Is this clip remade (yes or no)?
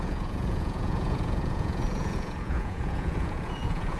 yes